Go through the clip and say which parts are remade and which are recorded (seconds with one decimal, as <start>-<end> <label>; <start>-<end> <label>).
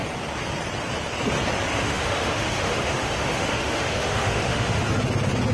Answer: 0.0-1.7 recorded; 1.7-4.8 remade; 4.8-5.5 recorded